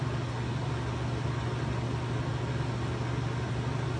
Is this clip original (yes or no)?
yes